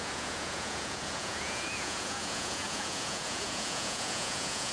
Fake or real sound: fake